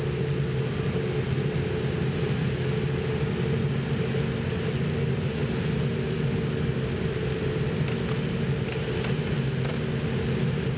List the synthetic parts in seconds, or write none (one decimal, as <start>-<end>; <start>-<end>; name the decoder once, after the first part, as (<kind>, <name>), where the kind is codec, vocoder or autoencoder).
none